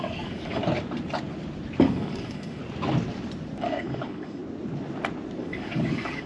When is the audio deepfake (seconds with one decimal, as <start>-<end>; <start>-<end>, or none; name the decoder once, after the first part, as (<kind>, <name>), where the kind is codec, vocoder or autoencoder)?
0.0-0.6 (codec, DAC); 1.8-2.6; 3.6-4.4; 5.4-6.3